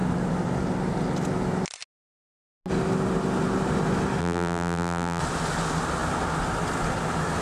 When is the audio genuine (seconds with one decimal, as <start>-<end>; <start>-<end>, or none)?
0.0-4.2; 5.2-7.4